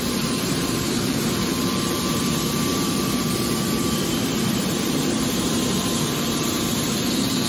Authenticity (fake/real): fake